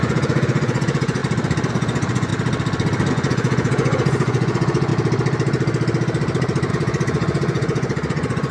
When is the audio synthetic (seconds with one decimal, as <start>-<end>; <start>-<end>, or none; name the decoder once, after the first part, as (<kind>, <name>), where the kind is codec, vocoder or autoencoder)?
0.0-1.2 (vocoder, Vocos); 1.7-2.3; 3.1-4.9; 6.7-8.5